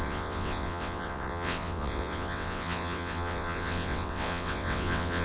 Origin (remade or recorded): remade